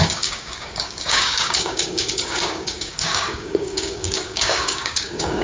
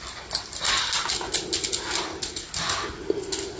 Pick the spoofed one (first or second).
first